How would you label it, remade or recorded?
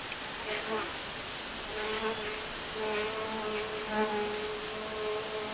recorded